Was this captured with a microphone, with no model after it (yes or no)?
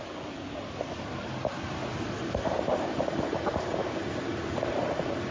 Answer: yes